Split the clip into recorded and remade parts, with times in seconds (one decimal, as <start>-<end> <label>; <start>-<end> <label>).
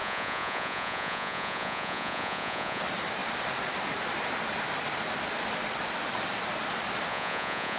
0.0-2.8 remade; 2.8-7.1 recorded; 7.1-7.8 remade